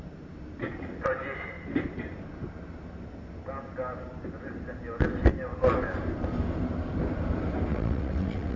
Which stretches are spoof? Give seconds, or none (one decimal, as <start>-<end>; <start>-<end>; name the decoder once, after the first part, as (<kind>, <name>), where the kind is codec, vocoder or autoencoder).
7.7-8.6 (vocoder, WaveNeXt)